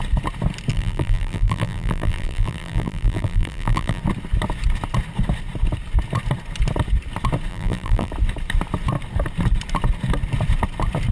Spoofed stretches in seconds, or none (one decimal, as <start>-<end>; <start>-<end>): 0.7-4.0; 7.5-8.1